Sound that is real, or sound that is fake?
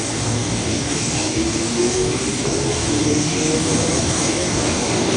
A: fake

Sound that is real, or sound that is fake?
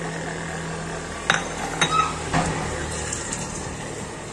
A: real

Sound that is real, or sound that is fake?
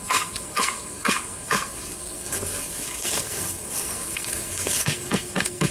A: fake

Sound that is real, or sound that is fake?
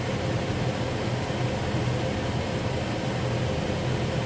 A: real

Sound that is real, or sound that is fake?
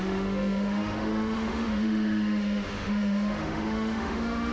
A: fake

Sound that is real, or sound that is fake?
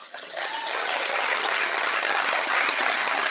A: fake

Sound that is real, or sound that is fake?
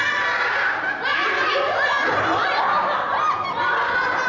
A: real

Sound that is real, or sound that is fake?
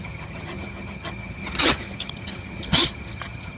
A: fake